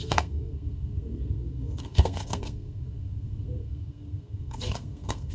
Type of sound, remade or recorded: remade